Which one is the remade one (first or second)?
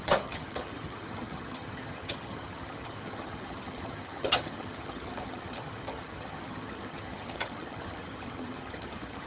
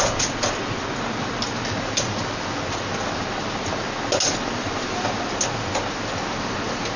first